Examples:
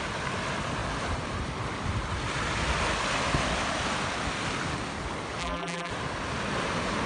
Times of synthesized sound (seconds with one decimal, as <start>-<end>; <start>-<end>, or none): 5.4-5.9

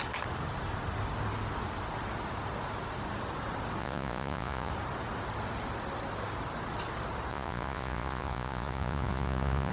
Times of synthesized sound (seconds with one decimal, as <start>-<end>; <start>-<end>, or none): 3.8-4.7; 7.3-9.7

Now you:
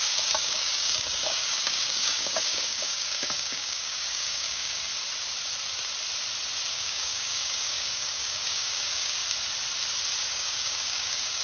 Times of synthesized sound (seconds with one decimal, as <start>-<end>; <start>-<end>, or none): 0.0-4.9; 6.7-9.2; 10.3-11.4